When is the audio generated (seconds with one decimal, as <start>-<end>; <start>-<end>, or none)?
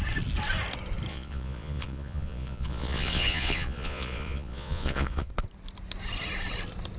1.1-5.3